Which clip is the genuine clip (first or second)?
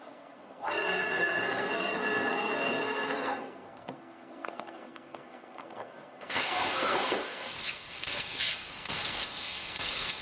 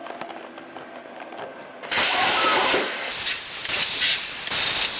second